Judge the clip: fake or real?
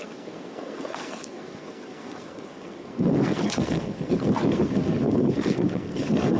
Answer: fake